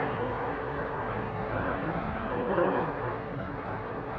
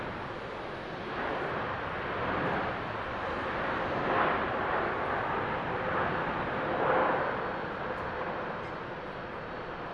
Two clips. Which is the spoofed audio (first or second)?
first